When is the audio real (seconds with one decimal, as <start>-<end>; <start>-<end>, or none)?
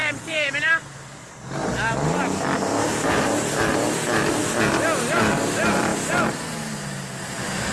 0.7-1.6; 4.4-7.7